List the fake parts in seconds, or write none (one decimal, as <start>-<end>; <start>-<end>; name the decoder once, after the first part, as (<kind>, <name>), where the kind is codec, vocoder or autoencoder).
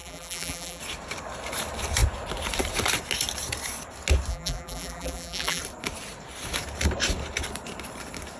0.0-0.8 (vocoder, BigVGAN v2); 4.3-5.6